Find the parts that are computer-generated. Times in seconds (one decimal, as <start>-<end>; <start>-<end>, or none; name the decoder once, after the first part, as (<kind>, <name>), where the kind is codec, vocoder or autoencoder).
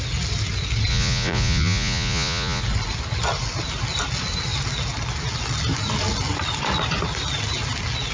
0.9-2.6 (vocoder, Vocos)